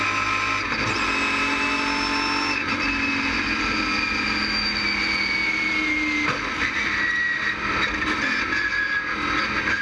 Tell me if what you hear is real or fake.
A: real